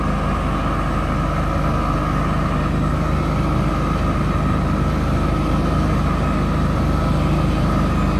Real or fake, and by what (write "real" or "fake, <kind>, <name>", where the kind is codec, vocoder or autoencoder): real